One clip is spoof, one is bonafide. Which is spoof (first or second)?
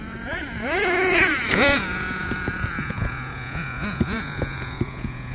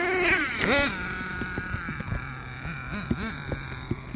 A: first